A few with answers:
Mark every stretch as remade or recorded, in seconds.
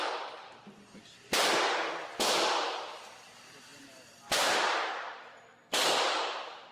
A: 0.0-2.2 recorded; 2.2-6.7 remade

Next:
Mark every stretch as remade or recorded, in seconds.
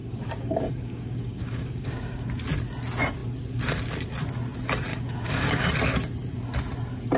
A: 0.0-2.3 remade; 2.3-4.9 recorded; 4.9-5.7 remade; 5.7-7.2 recorded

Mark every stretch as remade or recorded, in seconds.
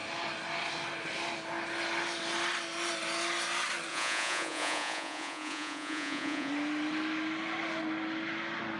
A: 0.0-3.9 recorded; 3.9-6.5 remade; 6.5-8.8 recorded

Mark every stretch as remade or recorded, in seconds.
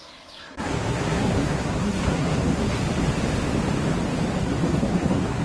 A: 0.0-2.8 remade; 2.8-4.4 recorded; 4.4-5.4 remade